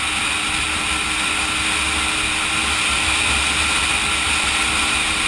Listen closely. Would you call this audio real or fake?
real